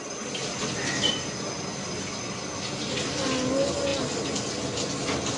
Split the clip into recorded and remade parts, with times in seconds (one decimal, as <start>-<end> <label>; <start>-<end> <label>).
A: 0.0-5.4 recorded

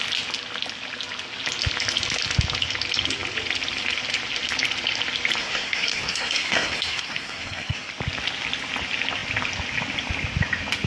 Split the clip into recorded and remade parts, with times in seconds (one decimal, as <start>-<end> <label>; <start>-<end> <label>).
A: 0.0-5.4 recorded; 5.4-7.9 remade; 7.9-10.9 recorded

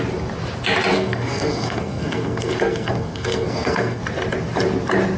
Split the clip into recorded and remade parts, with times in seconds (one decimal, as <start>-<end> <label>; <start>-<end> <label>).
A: 0.0-0.9 recorded; 0.9-4.0 remade; 4.0-5.2 recorded

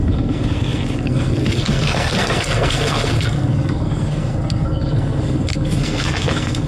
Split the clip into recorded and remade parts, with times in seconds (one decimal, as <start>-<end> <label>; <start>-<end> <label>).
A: 0.0-6.7 remade

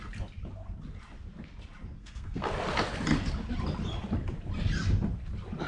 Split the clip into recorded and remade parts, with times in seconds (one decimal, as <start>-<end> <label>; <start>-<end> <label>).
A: 0.0-2.0 recorded; 2.0-2.5 remade; 2.5-5.7 recorded

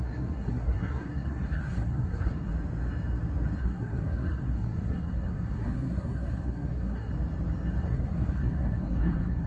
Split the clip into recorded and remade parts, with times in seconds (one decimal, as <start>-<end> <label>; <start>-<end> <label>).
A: 0.0-2.5 remade; 2.5-3.6 recorded; 3.6-7.1 remade; 7.1-7.8 recorded; 7.8-9.5 remade